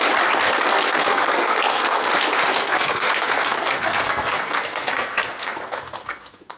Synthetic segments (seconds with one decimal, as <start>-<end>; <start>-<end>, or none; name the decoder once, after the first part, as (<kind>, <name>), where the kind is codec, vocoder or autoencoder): 0.9-2.1 (codec, SNAC); 2.5-6.6